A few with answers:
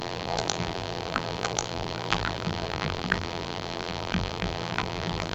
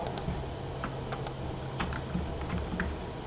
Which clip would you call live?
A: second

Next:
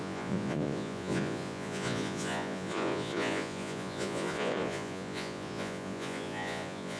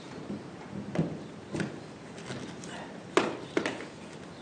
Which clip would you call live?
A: second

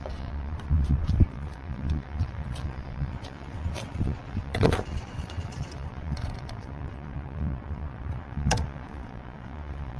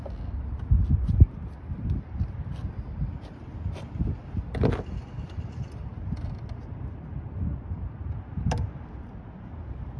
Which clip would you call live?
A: second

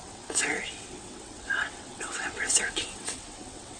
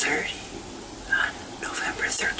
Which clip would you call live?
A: second